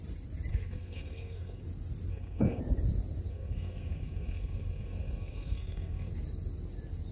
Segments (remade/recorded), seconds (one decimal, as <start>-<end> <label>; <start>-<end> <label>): 0.0-0.5 recorded; 0.5-1.6 remade; 1.6-2.1 recorded; 2.1-2.6 remade; 2.6-3.3 recorded; 3.3-6.1 remade; 6.1-7.1 recorded

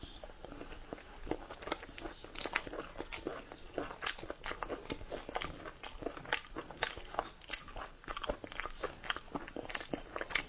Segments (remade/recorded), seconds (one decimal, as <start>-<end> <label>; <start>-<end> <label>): 0.0-10.5 recorded

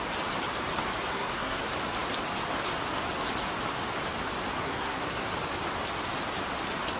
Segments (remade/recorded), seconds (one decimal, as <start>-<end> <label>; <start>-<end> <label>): 0.0-1.1 recorded; 1.1-1.6 remade; 1.6-4.6 recorded; 4.6-5.3 remade; 5.3-7.0 recorded

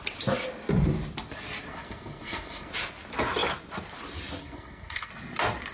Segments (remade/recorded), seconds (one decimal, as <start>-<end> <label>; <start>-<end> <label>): 0.0-1.7 recorded; 1.7-2.7 remade; 2.7-4.4 recorded; 4.4-5.1 remade; 5.1-5.7 recorded

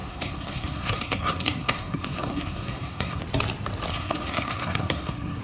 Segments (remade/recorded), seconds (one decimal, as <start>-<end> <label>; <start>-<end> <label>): 0.0-3.2 remade; 3.2-3.9 recorded; 3.9-5.4 remade

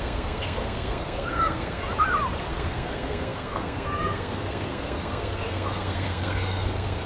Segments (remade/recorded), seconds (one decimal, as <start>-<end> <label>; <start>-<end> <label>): 0.0-1.8 remade; 1.8-2.5 recorded; 2.5-7.1 remade